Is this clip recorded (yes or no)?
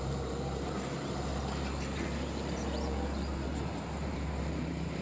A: no